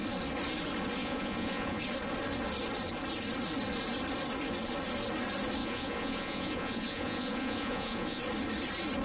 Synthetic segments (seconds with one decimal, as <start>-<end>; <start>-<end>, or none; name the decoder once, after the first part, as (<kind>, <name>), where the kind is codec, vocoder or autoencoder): 1.0-1.8 (vocoder, Vocos); 5.6-8.2